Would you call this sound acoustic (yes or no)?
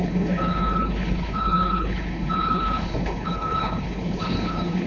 no